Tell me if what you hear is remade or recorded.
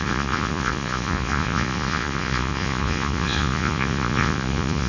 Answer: remade